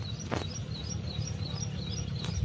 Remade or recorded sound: recorded